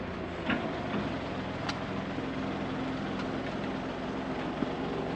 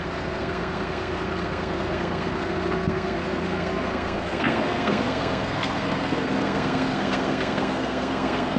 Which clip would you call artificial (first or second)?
second